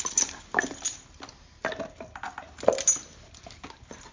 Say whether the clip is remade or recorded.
recorded